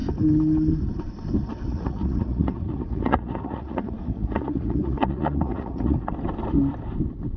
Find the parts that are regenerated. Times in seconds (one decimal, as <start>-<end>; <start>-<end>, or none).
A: 1.7-6.1